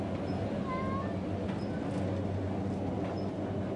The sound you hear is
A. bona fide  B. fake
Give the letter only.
A